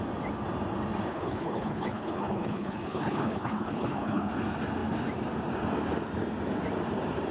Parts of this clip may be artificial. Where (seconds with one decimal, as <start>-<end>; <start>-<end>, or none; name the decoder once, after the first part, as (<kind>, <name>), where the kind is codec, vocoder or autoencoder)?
1.1-4.3 (codec, HILCodec)

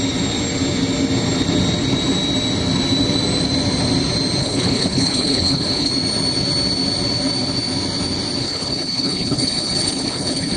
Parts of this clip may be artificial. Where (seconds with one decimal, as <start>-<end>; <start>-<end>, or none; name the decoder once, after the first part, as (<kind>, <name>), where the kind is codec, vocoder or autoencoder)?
4.4-5.9 (codec, HILCodec); 8.4-10.6